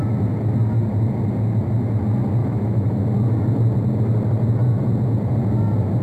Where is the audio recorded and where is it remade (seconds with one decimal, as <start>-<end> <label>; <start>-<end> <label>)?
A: 0.0-2.4 recorded; 2.4-3.0 remade; 3.0-6.0 recorded